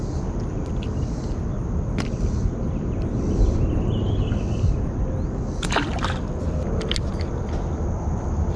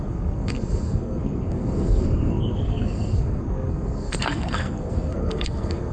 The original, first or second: first